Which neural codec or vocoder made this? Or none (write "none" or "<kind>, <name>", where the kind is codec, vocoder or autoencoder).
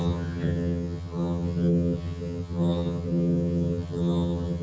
vocoder, HiFi-GAN